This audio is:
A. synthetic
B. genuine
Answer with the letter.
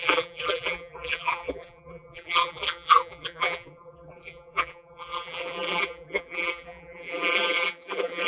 A